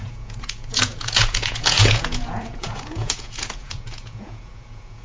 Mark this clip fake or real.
fake